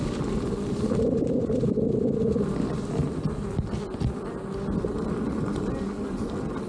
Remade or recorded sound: recorded